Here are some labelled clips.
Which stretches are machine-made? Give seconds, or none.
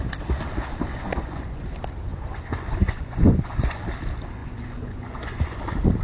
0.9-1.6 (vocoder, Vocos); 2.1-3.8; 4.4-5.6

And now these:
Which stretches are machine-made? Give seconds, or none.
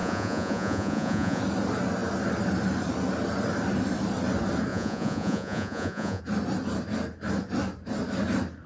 0.0-1.4 (vocoder, Vocos); 4.7-6.2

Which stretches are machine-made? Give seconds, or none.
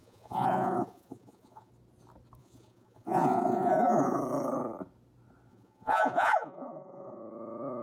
0.0-1.7 (vocoder, Vocos); 2.4-4.2; 5.5-7.2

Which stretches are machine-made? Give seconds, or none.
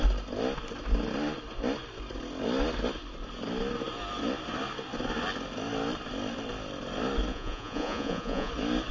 7.3-8.5 (vocoder, Vocos)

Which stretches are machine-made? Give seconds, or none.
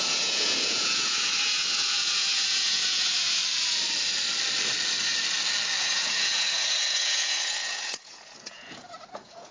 0.0-3.4 (vocoder, Vocos); 5.8-9.5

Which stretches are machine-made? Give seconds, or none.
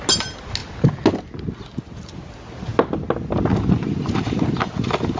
none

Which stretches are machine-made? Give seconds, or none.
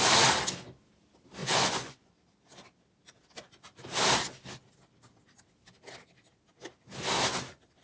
1.4-2.1 (vocoder, Vocos)